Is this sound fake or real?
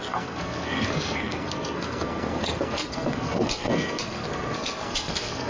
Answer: fake